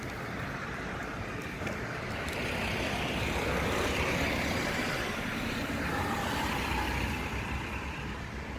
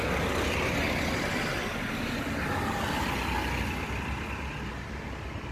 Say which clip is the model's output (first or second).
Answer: first